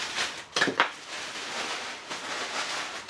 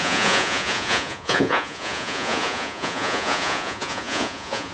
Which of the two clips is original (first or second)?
first